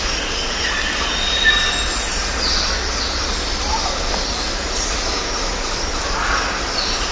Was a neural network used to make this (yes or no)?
no